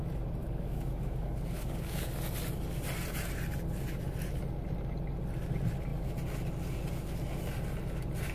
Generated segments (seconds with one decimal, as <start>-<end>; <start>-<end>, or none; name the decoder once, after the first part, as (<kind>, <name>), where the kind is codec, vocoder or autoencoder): 0.4-2.1 (codec, DAC)